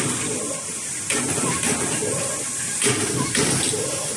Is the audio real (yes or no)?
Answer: yes